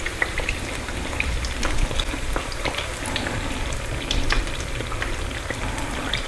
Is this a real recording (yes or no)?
no